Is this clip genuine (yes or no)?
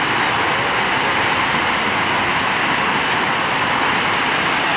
yes